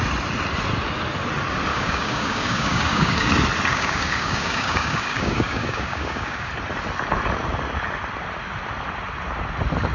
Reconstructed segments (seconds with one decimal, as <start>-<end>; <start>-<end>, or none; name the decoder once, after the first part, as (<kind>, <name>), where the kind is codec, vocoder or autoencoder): 1.7-3.3 (codec, DAC); 3.7-6.5